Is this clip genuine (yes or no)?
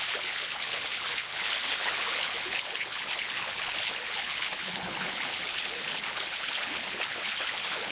no